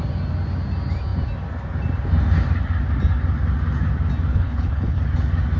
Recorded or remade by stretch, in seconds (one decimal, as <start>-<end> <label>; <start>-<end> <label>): 0.0-4.3 recorded; 4.3-5.0 remade; 5.0-5.6 recorded